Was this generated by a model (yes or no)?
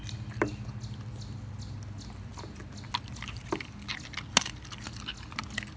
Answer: no